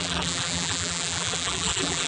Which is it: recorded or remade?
remade